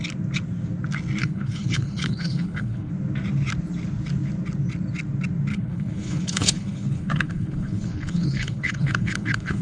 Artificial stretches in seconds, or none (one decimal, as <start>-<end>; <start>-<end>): 1.2-2.9; 5.5-9.6